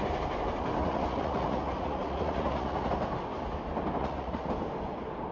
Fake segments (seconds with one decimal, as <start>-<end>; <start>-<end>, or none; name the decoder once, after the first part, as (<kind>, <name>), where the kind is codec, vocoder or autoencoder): 0.8-2.9 (vocoder, Vocos); 4.0-4.5